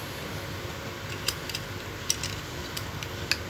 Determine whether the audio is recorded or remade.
recorded